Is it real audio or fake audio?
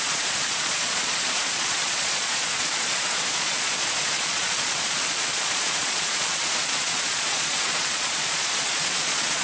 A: fake